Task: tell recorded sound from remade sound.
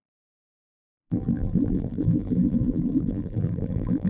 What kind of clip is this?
remade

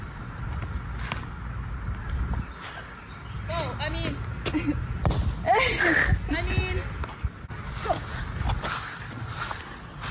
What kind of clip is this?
recorded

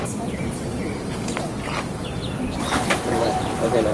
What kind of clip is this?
remade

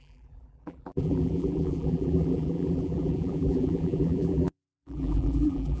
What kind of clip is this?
remade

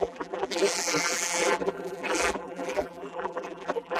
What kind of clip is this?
remade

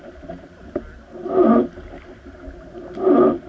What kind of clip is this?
recorded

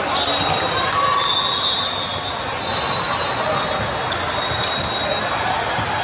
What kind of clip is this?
recorded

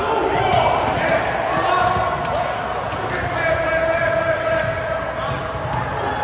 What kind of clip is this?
recorded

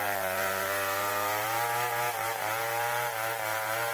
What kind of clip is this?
remade